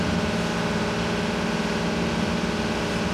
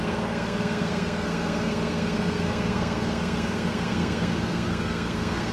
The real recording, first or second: first